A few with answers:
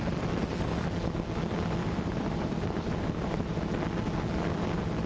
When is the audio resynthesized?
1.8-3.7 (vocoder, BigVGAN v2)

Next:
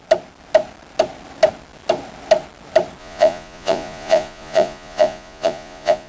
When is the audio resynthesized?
3.0-6.1 (vocoder, Vocos)

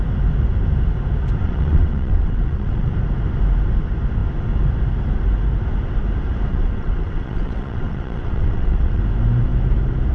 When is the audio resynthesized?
1.4-2.9 (vocoder, WaveNeXt); 6.5-9.0

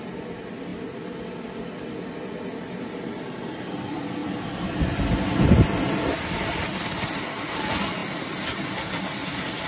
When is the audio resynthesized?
none

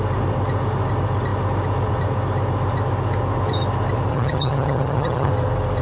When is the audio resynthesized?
4.1-5.3 (vocoder, HiFi-GAN)